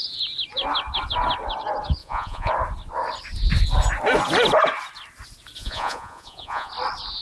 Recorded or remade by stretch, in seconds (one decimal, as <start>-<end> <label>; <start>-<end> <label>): 0.0-2.0 recorded; 2.0-2.5 remade; 2.5-5.6 recorded; 5.6-6.7 remade; 6.7-7.2 recorded